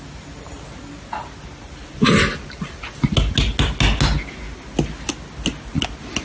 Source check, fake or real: real